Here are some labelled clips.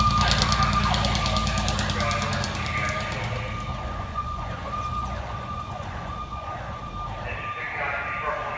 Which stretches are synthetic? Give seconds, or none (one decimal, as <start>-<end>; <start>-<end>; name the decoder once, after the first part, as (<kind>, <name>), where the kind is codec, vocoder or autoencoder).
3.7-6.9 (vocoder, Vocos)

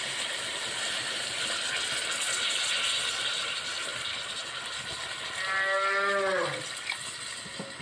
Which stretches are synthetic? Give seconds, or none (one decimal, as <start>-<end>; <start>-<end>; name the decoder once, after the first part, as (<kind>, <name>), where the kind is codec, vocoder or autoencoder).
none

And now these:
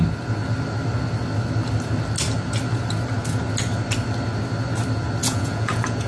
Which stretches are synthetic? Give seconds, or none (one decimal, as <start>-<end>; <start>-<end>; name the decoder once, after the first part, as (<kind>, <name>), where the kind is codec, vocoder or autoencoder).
5.2-6.1 (vocoder, Vocos)